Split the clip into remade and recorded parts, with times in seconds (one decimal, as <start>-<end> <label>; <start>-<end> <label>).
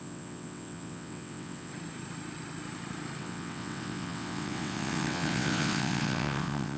0.0-1.7 remade; 1.7-3.2 recorded; 3.2-6.8 remade